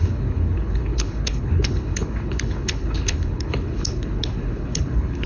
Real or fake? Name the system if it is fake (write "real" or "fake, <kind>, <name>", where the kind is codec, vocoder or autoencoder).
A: fake, codec, HILCodec